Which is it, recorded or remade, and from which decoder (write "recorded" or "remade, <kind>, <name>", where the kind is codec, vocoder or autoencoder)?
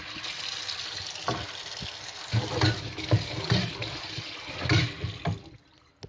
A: recorded